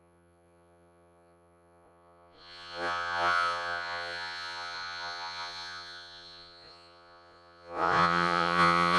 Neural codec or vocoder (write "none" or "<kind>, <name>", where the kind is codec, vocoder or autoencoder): vocoder, Vocos